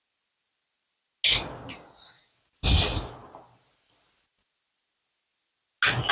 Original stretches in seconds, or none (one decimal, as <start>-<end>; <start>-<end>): 0.0-6.1